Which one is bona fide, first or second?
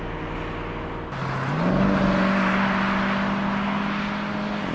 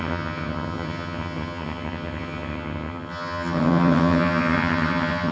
first